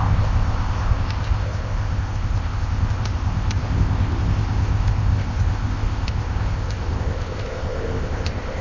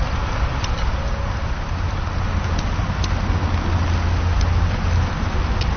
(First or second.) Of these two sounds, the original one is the second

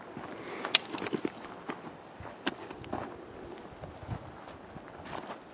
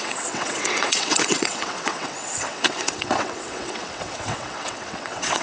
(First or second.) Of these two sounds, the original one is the first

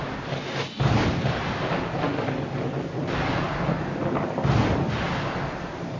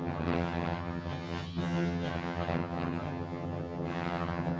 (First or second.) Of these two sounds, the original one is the first